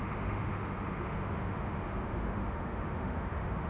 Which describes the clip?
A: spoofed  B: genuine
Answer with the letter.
A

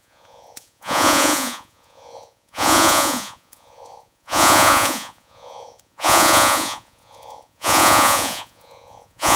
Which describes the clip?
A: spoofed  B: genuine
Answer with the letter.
A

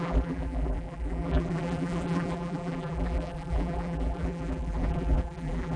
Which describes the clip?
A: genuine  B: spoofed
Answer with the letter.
B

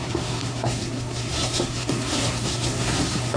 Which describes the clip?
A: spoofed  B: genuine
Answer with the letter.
A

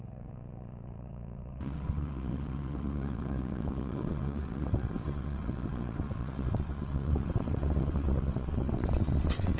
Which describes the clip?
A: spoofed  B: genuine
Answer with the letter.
A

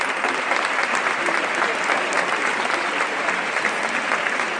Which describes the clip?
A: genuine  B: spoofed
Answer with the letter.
A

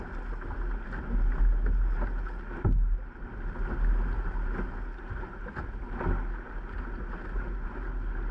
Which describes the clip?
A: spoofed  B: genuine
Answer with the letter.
B